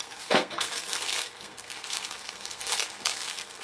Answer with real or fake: fake